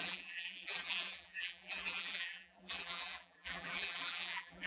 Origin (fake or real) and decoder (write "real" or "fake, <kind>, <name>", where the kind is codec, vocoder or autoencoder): fake, vocoder, BigVGAN v2